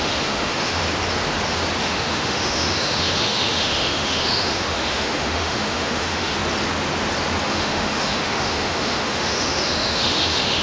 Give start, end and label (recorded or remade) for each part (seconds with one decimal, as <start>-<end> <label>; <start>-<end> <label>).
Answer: 0.0-0.8 remade; 0.8-1.8 recorded; 1.8-6.4 remade; 6.4-7.4 recorded; 7.4-10.6 remade